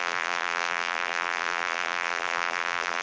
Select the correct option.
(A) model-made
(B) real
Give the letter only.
A